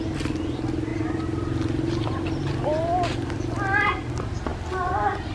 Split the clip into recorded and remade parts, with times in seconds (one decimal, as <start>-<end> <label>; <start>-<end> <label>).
0.0-5.3 recorded

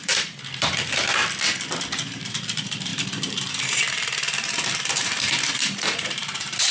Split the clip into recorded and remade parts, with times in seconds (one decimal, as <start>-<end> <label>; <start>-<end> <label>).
0.0-1.2 remade; 1.2-1.7 recorded; 1.7-6.7 remade

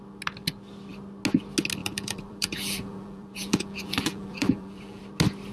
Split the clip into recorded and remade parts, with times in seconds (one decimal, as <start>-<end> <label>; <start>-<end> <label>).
0.0-1.8 recorded; 1.8-5.0 remade; 5.0-5.5 recorded

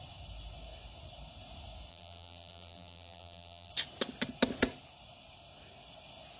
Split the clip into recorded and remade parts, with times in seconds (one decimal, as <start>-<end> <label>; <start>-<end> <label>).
0.0-1.9 recorded; 1.9-3.7 remade; 3.7-6.4 recorded

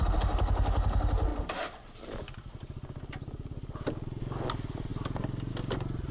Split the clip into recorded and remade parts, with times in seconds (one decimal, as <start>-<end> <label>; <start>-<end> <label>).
0.0-6.1 recorded